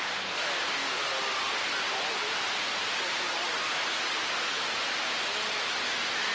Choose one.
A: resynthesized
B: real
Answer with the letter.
B